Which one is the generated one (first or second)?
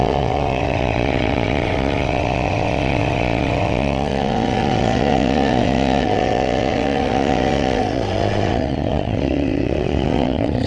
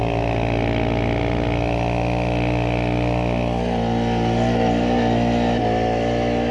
first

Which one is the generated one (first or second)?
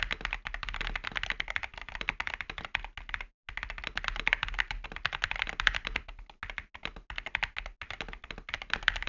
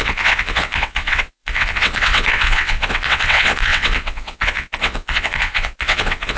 second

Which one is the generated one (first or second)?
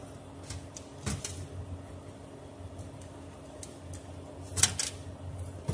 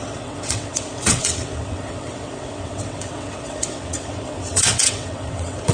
second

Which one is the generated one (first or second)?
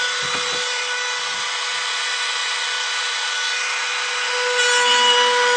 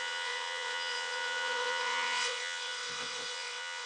second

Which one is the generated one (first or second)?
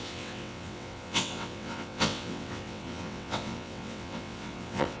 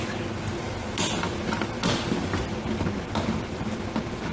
first